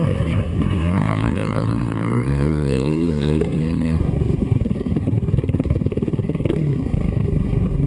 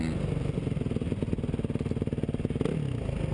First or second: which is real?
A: second